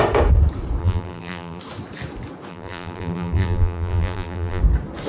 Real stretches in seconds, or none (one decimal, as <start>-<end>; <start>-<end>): 0.0-0.8; 1.6-2.5; 4.6-5.1